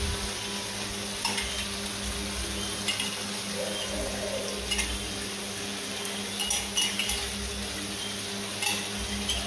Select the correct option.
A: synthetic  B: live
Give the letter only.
B